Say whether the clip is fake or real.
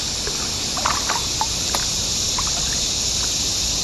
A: real